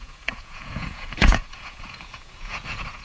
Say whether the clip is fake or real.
fake